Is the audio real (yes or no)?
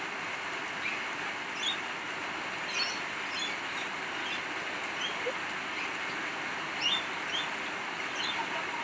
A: yes